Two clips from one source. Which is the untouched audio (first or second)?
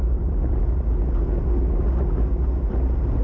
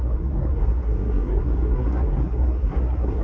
first